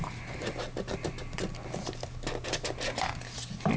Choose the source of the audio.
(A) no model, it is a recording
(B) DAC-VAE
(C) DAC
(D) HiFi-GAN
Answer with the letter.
A